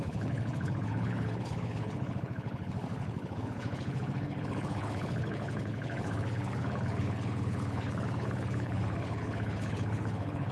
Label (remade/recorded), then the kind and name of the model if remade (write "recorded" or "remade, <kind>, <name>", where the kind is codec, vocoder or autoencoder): remade, codec, HILCodec